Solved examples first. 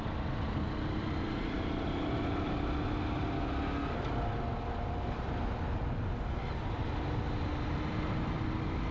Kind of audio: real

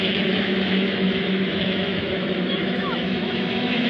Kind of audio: fake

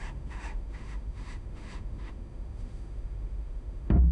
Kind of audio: fake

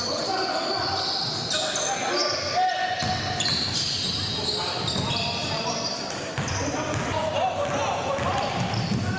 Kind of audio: real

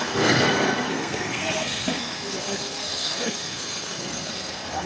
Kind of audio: fake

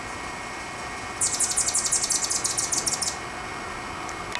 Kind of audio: real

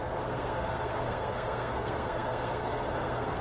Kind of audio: fake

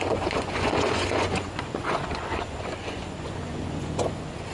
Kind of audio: fake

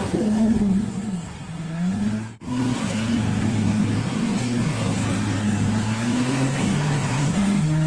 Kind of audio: fake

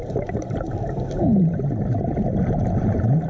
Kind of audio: real